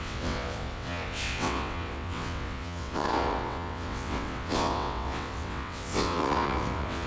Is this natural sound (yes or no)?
no